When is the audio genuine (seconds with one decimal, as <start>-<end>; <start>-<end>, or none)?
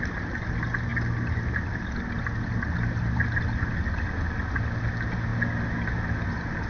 0.0-6.7